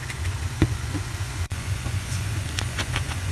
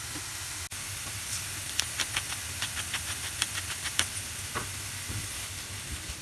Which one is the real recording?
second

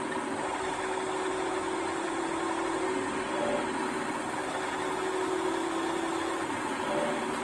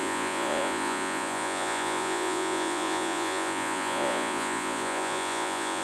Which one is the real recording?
first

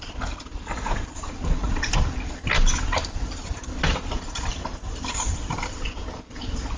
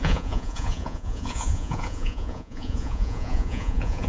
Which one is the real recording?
first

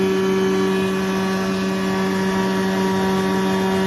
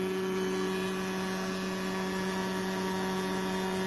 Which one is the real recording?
first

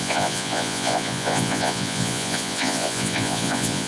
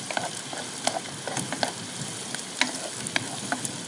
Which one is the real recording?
second